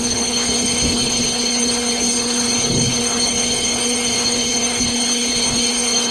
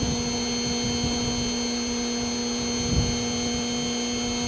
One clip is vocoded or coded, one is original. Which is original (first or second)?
second